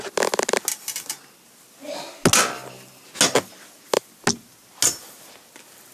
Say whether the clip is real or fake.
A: real